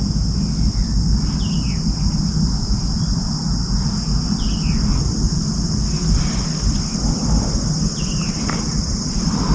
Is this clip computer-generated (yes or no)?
no